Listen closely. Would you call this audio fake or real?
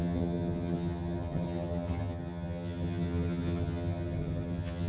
fake